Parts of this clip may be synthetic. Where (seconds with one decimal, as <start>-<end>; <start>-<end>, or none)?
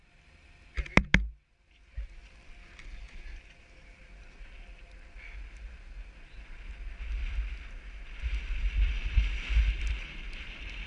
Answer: none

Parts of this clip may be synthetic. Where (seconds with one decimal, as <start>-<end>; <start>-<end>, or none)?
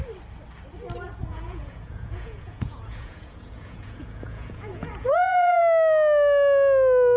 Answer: 1.3-5.6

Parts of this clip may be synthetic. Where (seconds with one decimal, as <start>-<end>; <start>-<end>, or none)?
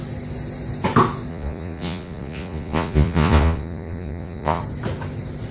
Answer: 1.3-4.6